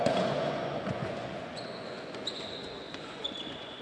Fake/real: fake